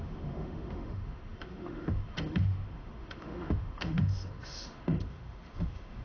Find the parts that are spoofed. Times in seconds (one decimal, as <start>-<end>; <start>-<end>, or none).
0.0-6.0